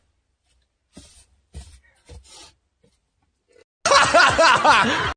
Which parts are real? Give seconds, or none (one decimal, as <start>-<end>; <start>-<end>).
0.0-5.2